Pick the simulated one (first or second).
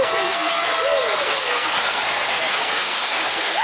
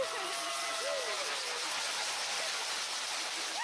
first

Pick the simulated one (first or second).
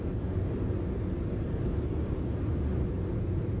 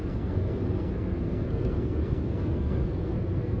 second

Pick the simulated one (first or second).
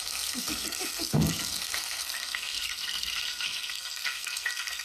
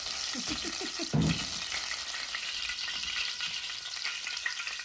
first